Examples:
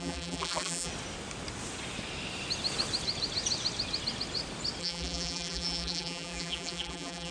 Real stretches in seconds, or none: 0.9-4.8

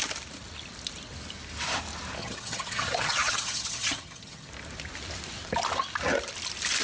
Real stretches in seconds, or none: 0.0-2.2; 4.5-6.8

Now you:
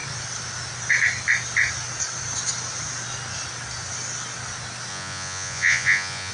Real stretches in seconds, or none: 0.0-4.9

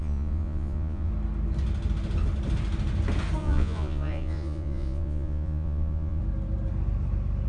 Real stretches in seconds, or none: 1.1-3.4; 6.2-7.5

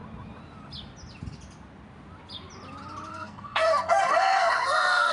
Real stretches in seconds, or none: 0.0-3.1

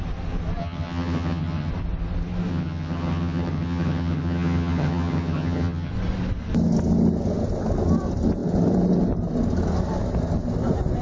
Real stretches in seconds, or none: 0.0-0.6; 1.7-2.5; 5.9-11.0